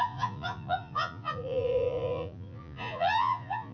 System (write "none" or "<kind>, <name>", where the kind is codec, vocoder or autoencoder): vocoder, Vocos